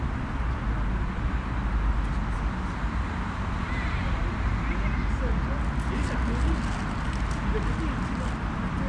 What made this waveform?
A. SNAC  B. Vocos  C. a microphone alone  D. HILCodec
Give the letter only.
C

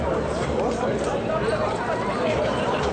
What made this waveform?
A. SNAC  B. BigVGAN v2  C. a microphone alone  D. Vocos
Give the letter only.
B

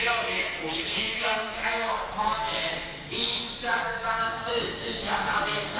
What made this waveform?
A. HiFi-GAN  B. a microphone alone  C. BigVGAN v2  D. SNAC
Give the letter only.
D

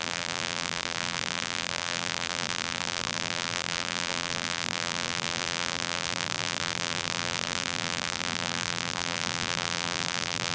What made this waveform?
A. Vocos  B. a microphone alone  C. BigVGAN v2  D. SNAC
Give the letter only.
C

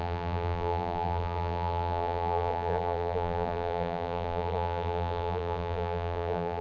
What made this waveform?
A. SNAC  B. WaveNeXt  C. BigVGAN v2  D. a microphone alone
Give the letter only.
C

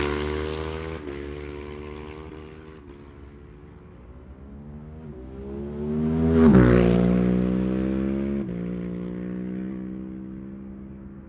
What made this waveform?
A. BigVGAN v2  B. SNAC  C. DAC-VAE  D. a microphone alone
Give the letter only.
D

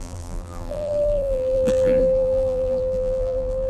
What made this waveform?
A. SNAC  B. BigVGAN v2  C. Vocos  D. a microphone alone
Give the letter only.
B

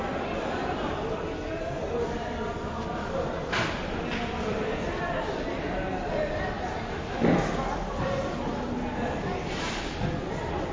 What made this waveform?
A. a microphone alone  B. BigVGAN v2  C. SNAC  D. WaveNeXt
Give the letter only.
A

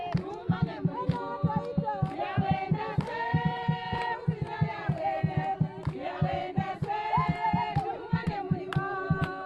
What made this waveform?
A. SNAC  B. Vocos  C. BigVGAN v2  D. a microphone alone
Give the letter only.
D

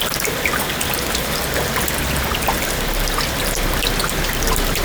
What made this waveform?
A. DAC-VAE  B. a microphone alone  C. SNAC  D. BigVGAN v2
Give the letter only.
B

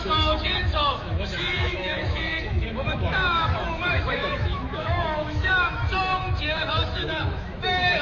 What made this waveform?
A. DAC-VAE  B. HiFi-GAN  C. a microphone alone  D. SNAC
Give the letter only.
A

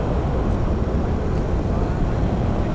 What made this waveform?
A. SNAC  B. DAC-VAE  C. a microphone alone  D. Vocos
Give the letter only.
C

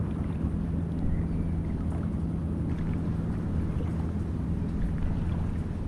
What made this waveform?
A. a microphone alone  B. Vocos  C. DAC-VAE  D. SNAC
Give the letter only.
A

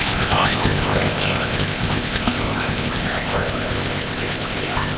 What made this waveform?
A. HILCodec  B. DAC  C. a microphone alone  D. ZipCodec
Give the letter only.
D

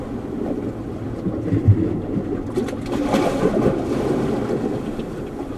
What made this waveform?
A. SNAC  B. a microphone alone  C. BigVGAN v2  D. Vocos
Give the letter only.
B